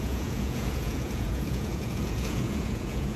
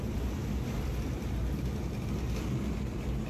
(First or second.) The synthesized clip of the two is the first